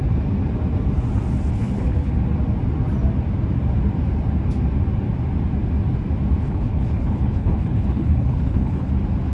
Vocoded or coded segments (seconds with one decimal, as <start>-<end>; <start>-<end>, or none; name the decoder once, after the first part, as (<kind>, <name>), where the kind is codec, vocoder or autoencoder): 1.5-2.1 (codec, HILCodec); 6.4-8.9